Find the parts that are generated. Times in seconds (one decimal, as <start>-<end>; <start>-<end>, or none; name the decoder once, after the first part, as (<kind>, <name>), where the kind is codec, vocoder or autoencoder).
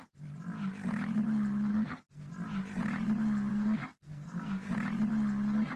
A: 1.7-2.3 (codec, SNAC); 3.5-4.7